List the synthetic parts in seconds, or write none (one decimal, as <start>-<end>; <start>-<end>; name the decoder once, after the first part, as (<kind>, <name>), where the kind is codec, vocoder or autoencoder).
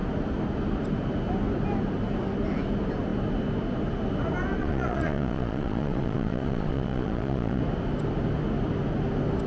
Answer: 4.6-7.6 (vocoder, Vocos)